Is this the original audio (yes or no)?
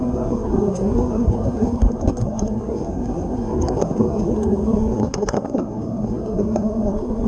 no